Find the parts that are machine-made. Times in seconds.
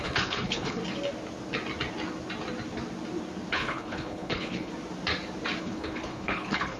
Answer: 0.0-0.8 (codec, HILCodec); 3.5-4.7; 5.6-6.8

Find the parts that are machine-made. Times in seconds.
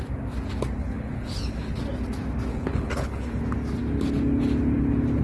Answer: 0.8-1.8 (codec, HILCodec); 2.5-3.4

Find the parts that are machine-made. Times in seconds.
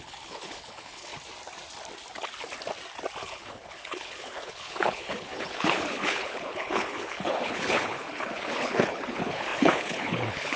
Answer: 0.0-1.1 (codec, HILCodec); 3.2-10.6